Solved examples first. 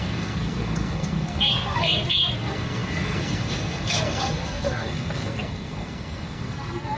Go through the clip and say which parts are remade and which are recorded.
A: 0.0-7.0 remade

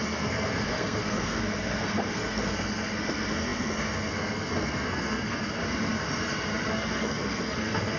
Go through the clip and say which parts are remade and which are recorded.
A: 0.0-5.6 remade; 5.6-6.7 recorded; 6.7-8.0 remade

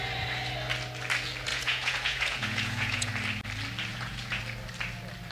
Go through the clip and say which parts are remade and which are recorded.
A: 0.0-1.5 recorded; 1.5-3.1 remade; 3.1-3.9 recorded; 3.9-4.4 remade; 4.4-5.3 recorded

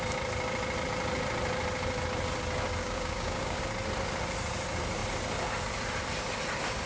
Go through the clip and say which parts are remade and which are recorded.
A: 0.0-2.8 recorded; 2.8-3.6 remade; 3.6-6.9 recorded

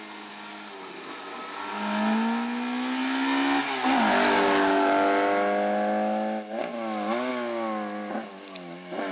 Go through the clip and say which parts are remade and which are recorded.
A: 0.0-9.1 recorded

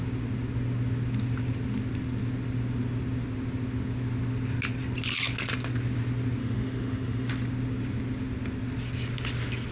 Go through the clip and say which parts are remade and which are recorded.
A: 0.0-6.4 recorded; 6.4-7.3 remade; 7.3-9.7 recorded

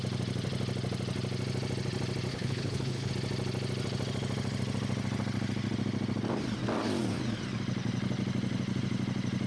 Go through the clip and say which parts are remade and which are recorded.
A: 0.0-2.3 recorded; 2.3-3.1 remade; 3.1-9.5 recorded

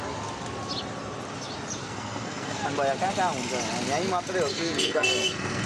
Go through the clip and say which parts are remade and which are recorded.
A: 0.0-1.8 recorded; 1.8-2.6 remade; 2.6-4.5 recorded; 4.5-5.7 remade